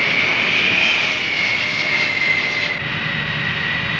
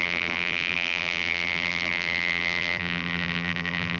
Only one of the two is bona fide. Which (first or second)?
first